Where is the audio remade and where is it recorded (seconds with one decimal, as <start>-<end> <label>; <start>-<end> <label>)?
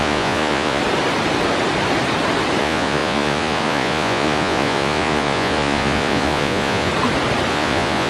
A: 0.0-0.8 remade; 0.8-2.6 recorded; 2.6-6.9 remade; 6.9-7.5 recorded; 7.5-8.1 remade